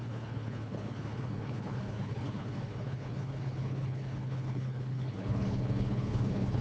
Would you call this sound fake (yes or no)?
yes